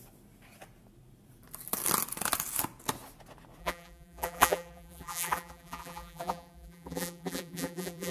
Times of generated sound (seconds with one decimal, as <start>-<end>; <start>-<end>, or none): 3.6-8.1